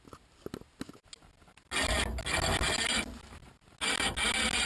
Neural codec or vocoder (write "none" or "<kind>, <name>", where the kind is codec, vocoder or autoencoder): none